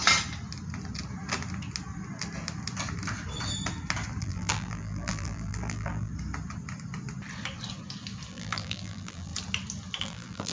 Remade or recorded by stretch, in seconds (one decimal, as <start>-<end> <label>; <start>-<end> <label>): 0.0-4.2 recorded; 4.2-6.1 remade; 6.1-8.3 recorded; 8.3-9.3 remade; 9.3-10.0 recorded; 10.0-10.5 remade